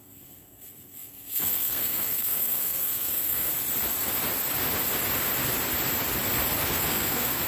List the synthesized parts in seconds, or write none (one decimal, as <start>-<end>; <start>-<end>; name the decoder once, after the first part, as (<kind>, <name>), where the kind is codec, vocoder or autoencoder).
0.0-3.5 (codec, SNAC); 6.6-7.5